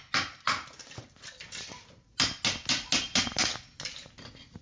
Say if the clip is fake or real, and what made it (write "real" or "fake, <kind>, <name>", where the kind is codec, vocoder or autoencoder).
real